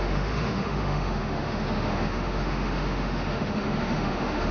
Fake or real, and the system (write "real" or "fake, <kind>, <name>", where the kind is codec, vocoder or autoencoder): fake, autoencoder, DAC-VAE